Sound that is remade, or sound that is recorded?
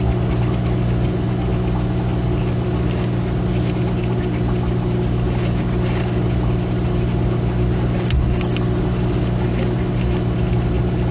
recorded